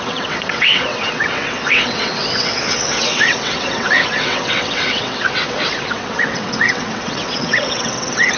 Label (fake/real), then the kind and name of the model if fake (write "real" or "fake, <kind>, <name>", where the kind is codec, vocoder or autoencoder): fake, vocoder, WaveNeXt